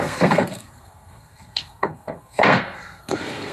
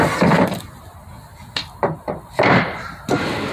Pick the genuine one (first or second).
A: second